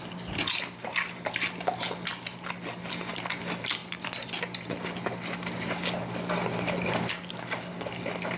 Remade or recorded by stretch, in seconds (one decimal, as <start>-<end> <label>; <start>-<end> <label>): 0.0-8.4 recorded